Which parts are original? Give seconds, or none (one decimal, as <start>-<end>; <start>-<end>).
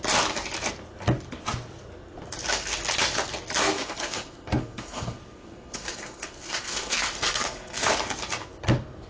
0.0-3.6; 7.9-9.1